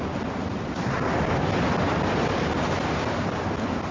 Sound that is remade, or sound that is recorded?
recorded